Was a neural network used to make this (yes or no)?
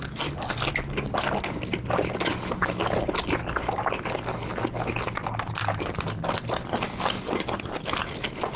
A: no